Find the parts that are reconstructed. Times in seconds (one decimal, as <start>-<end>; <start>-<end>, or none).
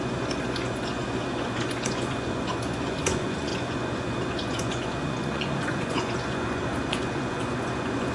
0.0-8.1